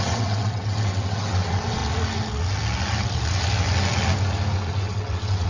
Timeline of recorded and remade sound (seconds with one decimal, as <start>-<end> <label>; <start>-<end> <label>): 0.0-1.8 remade; 1.8-4.8 recorded; 4.8-5.5 remade